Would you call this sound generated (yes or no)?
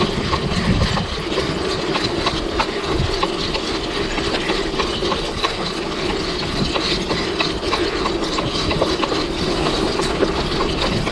yes